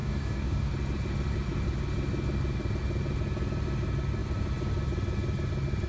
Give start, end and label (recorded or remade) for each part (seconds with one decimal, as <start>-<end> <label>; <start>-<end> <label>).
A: 0.0-0.7 remade; 0.7-5.9 recorded